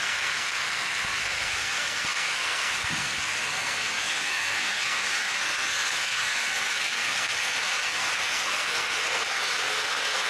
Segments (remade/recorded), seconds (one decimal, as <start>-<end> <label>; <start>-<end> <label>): 0.0-10.3 remade